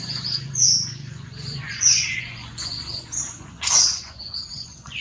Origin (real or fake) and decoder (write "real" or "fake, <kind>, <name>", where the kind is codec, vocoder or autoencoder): fake, vocoder, Vocos